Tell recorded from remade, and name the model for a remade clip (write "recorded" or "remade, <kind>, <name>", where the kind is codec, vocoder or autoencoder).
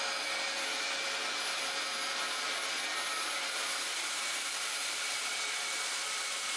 recorded